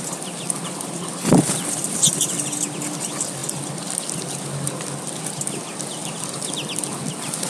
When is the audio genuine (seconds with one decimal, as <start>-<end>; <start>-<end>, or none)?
0.0-7.5